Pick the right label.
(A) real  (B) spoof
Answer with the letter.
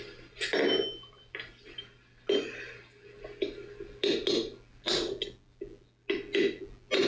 A